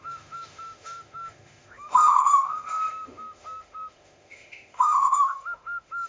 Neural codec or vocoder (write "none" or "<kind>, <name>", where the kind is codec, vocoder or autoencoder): autoencoder, DAC-VAE